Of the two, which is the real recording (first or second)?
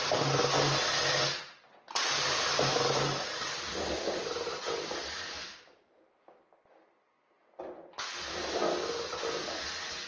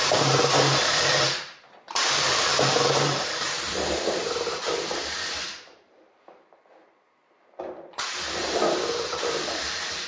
first